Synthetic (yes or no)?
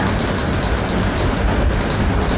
no